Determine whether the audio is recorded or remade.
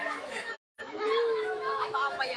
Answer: remade